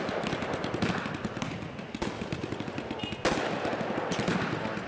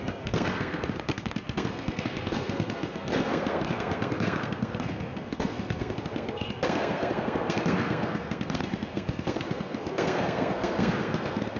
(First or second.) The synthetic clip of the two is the second